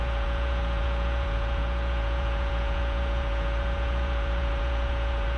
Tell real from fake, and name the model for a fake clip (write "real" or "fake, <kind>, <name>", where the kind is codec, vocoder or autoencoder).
fake, vocoder, Vocos